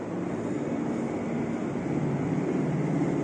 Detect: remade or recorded recorded